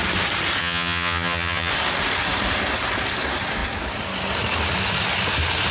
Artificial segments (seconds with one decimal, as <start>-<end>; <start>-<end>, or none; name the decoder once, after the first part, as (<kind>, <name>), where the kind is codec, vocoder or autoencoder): 0.6-1.7 (vocoder, HiFi-GAN)